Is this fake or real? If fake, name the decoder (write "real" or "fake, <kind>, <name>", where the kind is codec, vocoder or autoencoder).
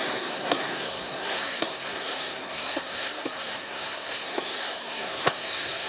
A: fake, codec, SNAC